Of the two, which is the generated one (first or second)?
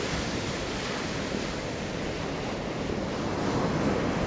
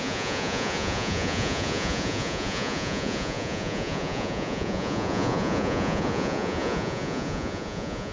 second